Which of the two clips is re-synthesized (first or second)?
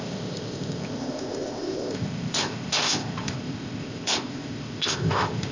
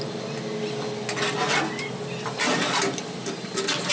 first